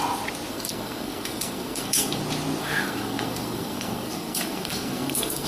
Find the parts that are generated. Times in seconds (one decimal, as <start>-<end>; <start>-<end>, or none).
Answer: 0.5-2.2; 2.6-5.5